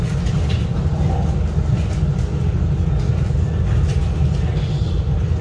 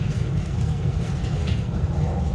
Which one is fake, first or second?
second